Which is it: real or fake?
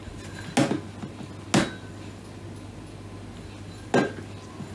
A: real